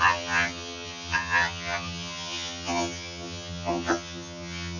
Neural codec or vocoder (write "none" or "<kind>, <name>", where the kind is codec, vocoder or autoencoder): vocoder, HiFi-GAN